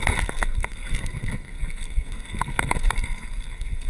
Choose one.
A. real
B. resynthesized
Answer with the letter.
B